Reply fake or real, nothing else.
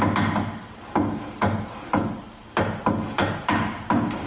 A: real